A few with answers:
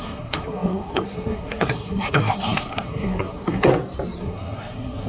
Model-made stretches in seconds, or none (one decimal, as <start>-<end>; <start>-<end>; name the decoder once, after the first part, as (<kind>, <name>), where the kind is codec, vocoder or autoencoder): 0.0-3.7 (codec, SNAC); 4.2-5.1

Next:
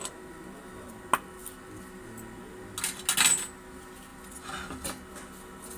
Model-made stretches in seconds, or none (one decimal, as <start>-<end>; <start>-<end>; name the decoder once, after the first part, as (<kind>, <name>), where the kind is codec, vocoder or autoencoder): none

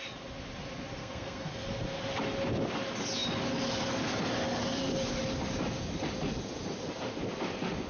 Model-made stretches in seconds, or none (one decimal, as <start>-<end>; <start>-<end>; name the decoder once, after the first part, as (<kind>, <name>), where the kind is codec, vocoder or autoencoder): 1.0-1.5 (codec, SNAC)

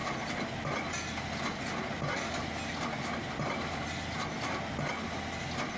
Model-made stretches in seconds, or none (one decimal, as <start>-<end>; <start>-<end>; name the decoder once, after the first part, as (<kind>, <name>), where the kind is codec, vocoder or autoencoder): none

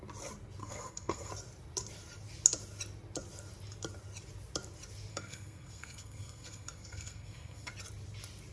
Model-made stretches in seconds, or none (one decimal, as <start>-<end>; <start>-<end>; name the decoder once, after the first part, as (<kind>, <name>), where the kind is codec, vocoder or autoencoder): 0.6-1.3 (codec, SNAC); 5.1-7.7

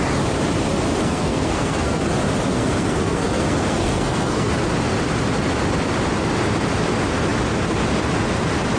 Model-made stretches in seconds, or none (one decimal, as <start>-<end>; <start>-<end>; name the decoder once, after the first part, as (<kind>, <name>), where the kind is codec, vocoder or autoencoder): 1.0-2.0 (codec, SNAC); 2.5-4.5